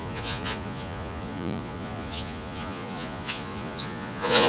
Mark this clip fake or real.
fake